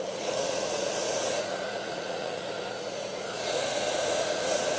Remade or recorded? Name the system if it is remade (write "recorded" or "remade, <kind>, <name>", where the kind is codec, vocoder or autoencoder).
remade, vocoder, Vocos